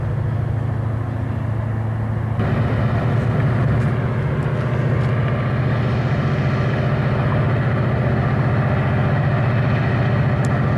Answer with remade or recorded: recorded